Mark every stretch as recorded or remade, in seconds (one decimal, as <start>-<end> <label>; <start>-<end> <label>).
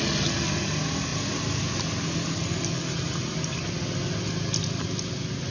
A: 0.0-5.5 recorded